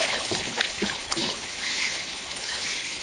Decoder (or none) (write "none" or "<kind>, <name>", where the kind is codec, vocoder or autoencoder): codec, HILCodec